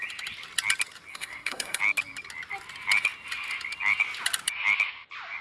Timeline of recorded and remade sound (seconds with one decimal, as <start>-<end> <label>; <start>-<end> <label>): 0.0-1.1 recorded; 1.1-1.8 remade; 1.8-5.4 recorded